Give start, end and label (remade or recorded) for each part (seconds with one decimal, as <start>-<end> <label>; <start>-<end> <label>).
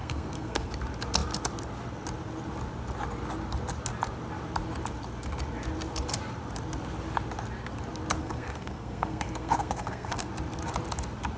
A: 0.0-0.7 remade; 0.7-8.2 recorded; 8.2-10.3 remade; 10.3-11.4 recorded